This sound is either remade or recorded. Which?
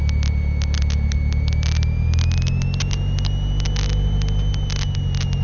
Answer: recorded